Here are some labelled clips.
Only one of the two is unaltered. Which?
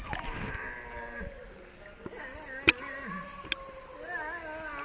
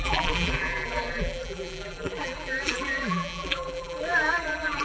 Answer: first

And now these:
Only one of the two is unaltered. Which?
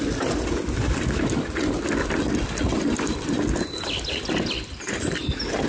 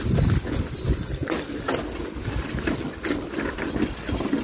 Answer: first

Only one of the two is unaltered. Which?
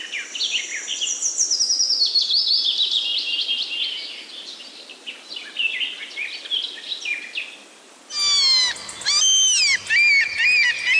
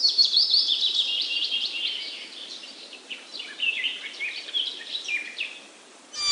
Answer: first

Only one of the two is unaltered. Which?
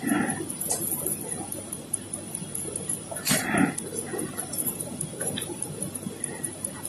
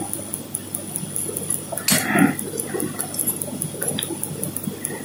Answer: second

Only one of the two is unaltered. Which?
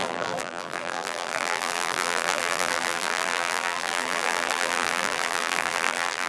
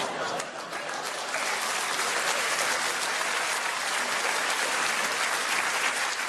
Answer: second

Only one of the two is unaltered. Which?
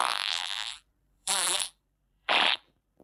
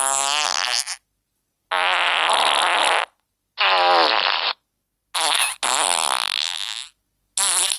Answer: second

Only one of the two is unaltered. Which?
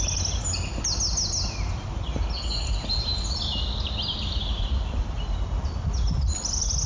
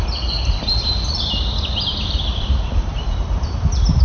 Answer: first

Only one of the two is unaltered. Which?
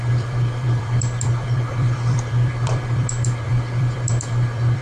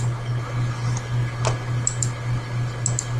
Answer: second